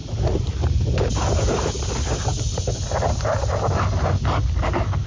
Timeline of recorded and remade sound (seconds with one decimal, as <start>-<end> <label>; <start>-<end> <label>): 0.0-5.1 recorded